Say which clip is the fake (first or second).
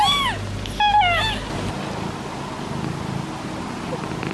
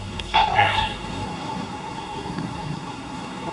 second